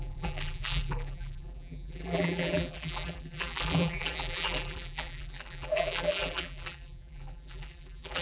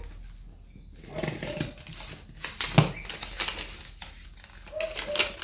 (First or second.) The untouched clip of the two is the second